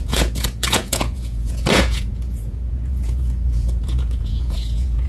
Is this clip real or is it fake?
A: fake